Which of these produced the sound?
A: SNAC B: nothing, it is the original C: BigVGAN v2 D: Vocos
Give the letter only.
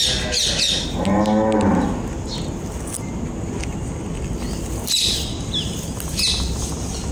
B